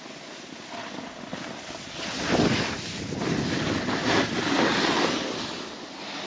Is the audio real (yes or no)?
yes